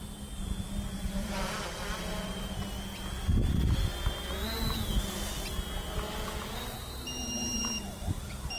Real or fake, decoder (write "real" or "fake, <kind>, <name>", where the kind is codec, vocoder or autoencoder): real